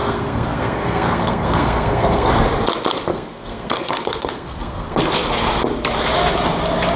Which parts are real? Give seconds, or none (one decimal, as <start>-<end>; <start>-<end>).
2.3-3.1; 5.0-7.0